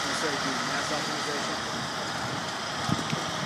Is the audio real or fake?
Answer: real